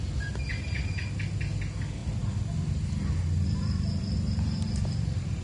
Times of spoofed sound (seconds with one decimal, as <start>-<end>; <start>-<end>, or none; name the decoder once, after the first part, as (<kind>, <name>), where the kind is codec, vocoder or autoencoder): 2.0-5.4 (vocoder, BigVGAN v2)